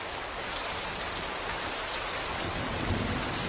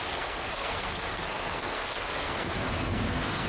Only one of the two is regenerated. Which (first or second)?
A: second